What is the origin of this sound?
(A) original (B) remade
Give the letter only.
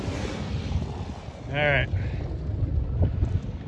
A